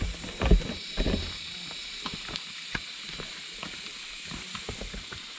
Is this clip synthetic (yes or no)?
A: no